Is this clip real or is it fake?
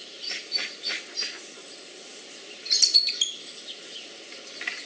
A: fake